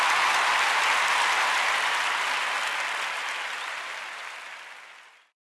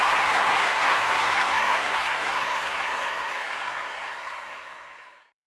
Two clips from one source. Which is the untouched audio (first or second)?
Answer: first